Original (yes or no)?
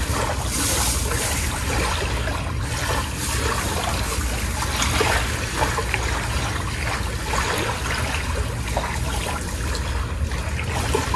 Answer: yes